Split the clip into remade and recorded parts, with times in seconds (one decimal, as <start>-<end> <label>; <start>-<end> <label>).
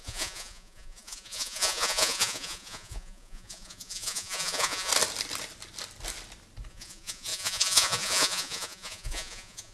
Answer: 0.0-4.9 remade; 4.9-6.7 recorded; 6.7-9.7 remade